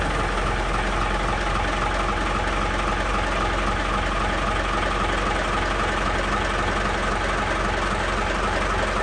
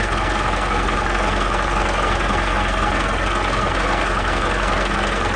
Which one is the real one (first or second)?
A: first